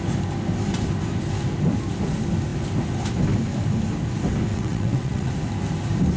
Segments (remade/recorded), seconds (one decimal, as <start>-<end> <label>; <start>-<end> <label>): 0.0-4.5 recorded; 4.5-5.3 remade; 5.3-6.2 recorded